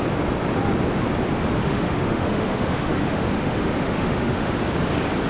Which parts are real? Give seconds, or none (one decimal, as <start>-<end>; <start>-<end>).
0.0-1.6; 4.5-5.3